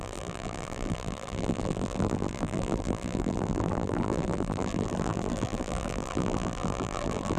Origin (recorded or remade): remade